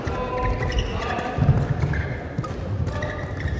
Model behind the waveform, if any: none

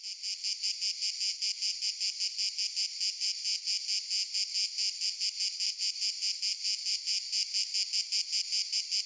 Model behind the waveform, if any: none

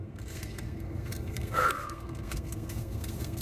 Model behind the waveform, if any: codec, SNAC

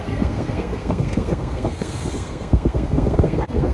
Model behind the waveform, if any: codec, SNAC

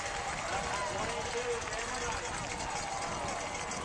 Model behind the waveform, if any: none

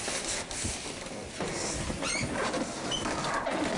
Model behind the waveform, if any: none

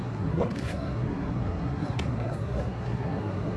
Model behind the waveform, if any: codec, SNAC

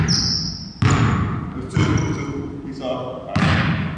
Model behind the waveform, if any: none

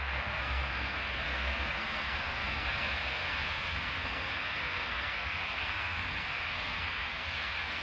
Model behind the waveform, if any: codec, SNAC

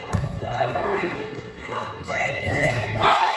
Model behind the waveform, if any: codec, SNAC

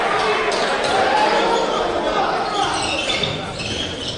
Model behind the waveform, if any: none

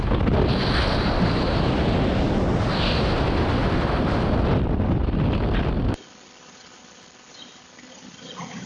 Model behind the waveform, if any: none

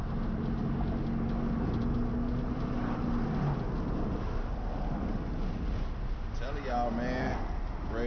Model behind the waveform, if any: none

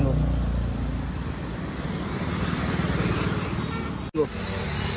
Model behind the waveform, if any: none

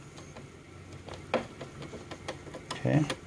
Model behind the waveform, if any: none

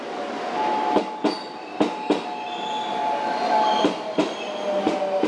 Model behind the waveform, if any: none